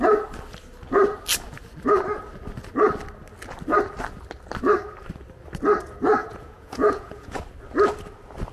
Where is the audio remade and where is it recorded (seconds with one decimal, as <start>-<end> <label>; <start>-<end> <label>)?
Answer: 0.0-6.2 recorded; 6.2-7.4 remade; 7.4-8.5 recorded